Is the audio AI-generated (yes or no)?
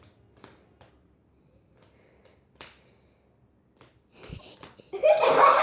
no